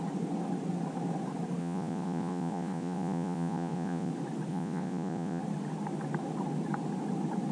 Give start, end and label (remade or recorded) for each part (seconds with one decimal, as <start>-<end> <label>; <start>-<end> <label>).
0.0-1.6 recorded; 1.6-4.1 remade; 4.1-4.5 recorded; 4.5-5.4 remade; 5.4-7.5 recorded